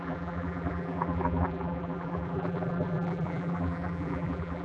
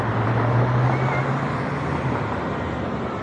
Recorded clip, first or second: second